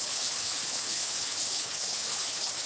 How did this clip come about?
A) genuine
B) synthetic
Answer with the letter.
B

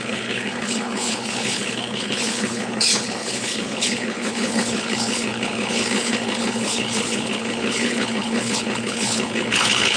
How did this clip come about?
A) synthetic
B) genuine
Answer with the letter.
A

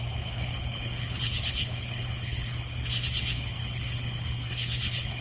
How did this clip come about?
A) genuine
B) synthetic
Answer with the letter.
B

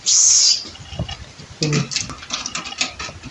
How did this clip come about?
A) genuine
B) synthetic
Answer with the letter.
A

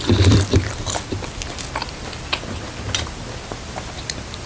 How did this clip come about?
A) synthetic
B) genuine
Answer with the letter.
B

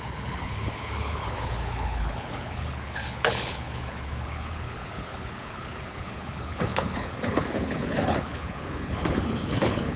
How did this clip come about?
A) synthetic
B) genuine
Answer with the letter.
A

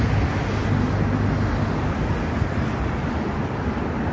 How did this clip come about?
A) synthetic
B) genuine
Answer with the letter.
B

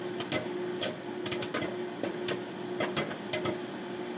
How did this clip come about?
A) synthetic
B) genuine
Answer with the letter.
B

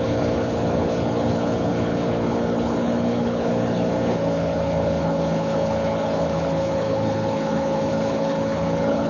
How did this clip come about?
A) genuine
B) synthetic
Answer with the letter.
B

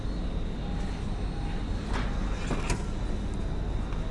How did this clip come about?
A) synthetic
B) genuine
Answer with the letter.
B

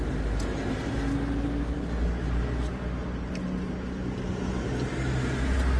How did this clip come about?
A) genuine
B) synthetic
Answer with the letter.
A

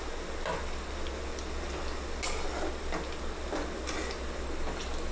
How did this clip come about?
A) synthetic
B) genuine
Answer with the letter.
B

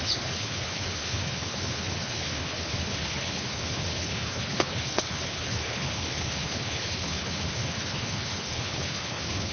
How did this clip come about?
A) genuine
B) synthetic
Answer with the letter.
B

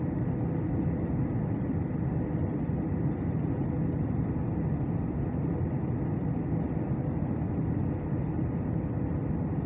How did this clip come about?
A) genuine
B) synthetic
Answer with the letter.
A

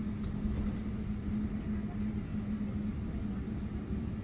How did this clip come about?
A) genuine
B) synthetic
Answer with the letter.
A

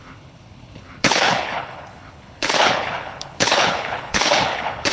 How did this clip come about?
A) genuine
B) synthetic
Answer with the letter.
B